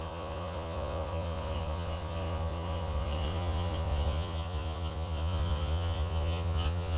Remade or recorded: remade